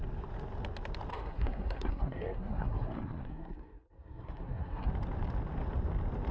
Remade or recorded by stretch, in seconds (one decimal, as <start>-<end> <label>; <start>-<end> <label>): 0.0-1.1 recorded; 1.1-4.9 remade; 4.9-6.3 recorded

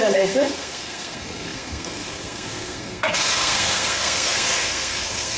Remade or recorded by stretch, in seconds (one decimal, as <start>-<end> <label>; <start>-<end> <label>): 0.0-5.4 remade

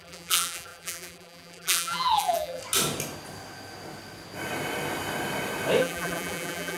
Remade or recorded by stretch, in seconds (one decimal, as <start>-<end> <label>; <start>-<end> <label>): 0.0-2.6 remade; 2.6-5.8 recorded; 5.8-6.8 remade